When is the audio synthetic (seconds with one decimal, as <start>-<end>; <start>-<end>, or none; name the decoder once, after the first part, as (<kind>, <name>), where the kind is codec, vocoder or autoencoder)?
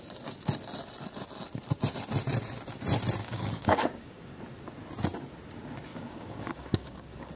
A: 3.2-4.3 (codec, DAC); 5.9-7.3